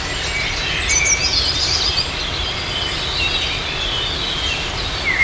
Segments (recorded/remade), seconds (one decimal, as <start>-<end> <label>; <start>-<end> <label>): 0.0-5.2 recorded